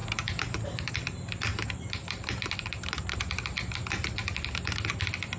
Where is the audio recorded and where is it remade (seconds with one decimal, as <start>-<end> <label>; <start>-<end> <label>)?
0.0-0.9 remade; 0.9-1.5 recorded; 1.5-3.2 remade; 3.2-5.4 recorded